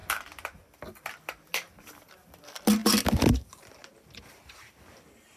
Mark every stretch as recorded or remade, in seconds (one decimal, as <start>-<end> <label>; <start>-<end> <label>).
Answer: 0.0-5.4 recorded